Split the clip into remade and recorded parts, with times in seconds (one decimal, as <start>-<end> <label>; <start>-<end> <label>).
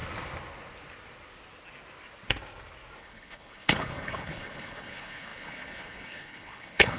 0.0-3.0 recorded; 3.0-7.0 remade